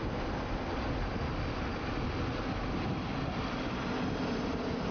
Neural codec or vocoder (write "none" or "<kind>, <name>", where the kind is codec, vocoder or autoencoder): none